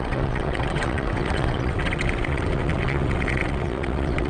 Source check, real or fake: fake